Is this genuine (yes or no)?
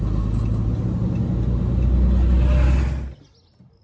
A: yes